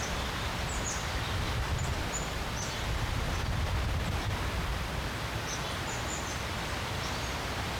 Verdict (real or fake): real